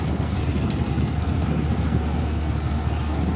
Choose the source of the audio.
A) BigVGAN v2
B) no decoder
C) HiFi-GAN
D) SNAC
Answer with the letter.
D